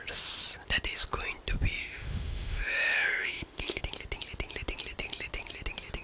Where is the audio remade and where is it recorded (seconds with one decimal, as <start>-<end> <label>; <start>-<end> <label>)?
0.0-1.8 recorded; 1.8-3.8 remade; 3.8-6.0 recorded